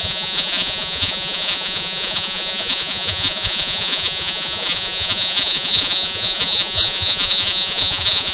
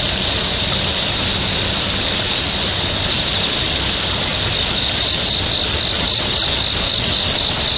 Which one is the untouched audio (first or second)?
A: second